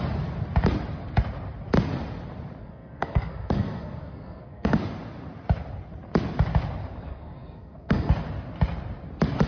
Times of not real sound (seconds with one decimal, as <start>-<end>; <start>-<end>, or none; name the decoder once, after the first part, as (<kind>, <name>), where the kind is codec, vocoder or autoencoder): 2.6-4.8 (codec, SNAC); 7.1-8.1